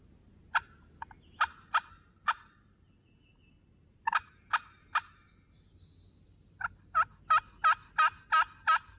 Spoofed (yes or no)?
no